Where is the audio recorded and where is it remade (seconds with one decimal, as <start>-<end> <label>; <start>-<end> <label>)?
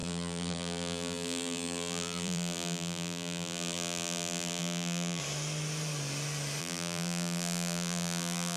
0.0-5.2 remade; 5.2-6.6 recorded; 6.6-8.6 remade